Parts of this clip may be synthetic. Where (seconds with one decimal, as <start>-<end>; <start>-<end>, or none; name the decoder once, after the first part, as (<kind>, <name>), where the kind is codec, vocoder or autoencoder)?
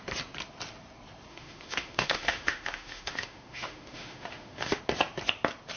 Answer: 1.3-4.8 (autoencoder, DAC-VAE)